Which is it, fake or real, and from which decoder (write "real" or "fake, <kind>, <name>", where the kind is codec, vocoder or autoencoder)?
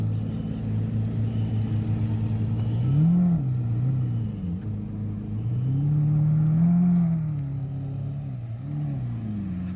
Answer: real